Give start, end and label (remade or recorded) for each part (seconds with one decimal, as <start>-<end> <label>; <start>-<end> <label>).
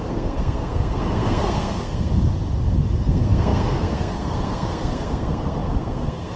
0.0-2.1 remade; 2.1-3.0 recorded; 3.0-6.4 remade